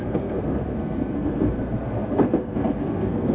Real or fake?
fake